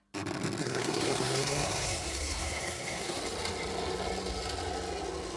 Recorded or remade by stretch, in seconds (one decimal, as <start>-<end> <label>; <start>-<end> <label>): 0.0-0.6 recorded; 0.6-3.2 remade; 3.2-5.4 recorded